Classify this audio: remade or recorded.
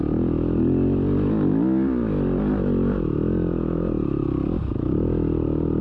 recorded